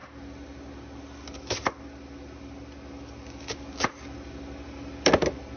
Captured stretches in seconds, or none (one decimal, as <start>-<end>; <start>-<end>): 0.0-5.6